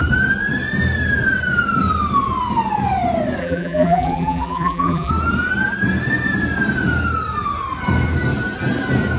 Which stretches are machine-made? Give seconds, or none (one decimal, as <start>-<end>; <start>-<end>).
3.4-5.1